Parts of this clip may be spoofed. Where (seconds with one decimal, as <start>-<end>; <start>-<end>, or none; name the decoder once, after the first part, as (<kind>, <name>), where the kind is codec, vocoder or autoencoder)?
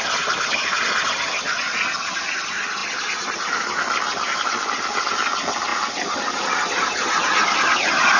none